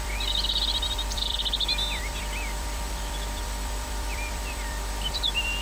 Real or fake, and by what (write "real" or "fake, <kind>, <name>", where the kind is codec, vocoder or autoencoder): fake, vocoder, BigVGAN v2